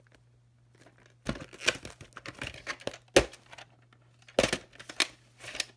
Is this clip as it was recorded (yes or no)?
yes